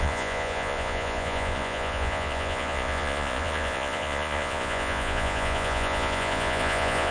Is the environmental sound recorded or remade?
remade